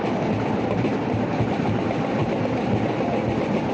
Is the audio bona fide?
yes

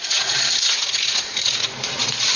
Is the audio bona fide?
no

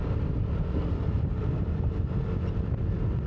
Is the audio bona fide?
no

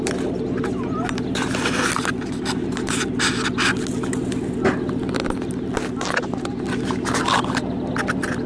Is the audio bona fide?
yes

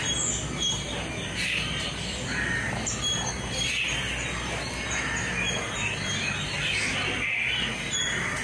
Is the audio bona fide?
yes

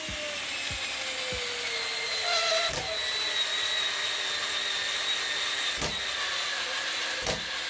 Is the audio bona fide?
yes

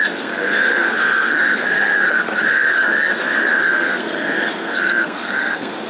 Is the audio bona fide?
no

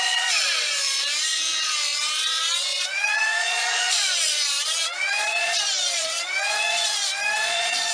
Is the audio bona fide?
no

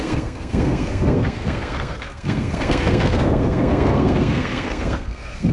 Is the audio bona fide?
no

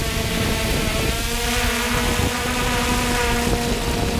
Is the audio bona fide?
yes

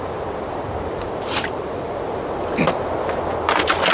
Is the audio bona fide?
yes